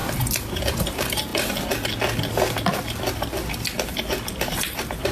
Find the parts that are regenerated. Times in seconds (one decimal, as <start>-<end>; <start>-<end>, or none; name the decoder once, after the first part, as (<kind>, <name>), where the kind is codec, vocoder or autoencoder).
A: 0.8-1.3 (vocoder, BigVGAN v2); 4.4-5.1